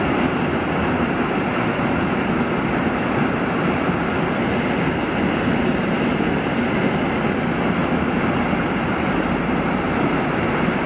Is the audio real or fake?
real